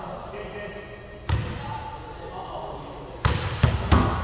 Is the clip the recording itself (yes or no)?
yes